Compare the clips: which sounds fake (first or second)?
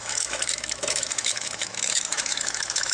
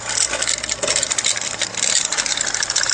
first